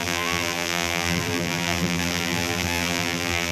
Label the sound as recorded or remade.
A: remade